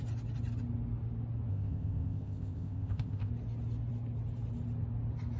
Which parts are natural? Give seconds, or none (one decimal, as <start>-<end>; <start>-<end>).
0.0-1.5; 3.3-5.4